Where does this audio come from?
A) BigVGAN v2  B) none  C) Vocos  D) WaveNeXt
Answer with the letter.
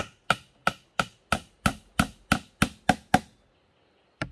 B